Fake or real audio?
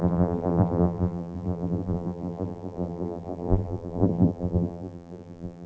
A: fake